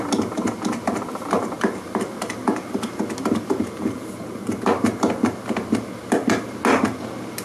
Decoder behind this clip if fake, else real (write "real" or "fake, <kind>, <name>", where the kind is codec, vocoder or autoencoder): real